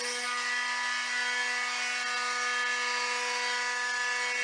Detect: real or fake real